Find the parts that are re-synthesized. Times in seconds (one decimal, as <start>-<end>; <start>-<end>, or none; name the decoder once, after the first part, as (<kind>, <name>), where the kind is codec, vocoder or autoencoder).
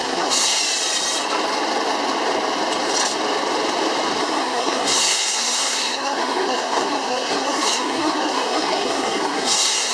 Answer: 0.0-0.6 (codec, SNAC); 4.2-9.9